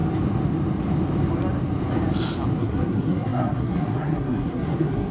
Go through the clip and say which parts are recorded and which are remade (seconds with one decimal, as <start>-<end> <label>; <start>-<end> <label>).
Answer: 0.0-2.6 recorded; 2.6-5.1 remade